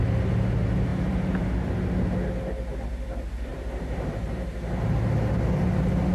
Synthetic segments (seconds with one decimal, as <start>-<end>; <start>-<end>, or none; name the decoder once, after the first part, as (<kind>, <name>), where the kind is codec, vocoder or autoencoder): 0.9-1.4 (vocoder, BigVGAN v2); 3.5-4.5